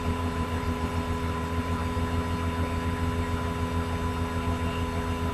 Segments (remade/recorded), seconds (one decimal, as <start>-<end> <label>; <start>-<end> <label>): 0.0-1.8 remade; 1.8-5.3 recorded